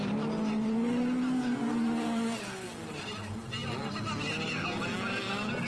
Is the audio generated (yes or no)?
no